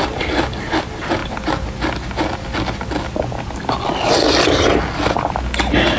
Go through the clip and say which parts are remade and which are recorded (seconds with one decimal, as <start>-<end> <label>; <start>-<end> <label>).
0.0-6.0 recorded